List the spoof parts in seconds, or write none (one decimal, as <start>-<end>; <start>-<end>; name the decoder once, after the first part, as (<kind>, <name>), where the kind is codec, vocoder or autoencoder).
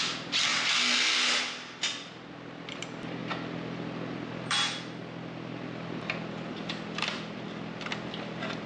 none